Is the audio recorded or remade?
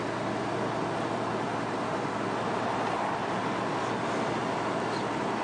recorded